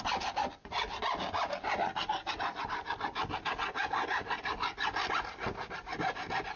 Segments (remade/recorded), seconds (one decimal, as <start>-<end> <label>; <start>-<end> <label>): 0.0-6.6 recorded